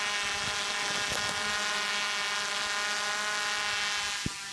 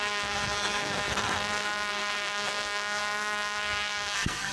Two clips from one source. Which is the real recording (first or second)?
first